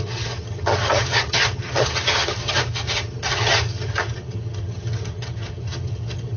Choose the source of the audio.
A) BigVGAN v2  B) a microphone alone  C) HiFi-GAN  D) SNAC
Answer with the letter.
C